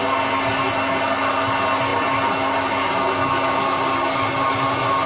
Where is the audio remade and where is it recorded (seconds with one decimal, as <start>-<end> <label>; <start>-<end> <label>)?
0.0-5.1 recorded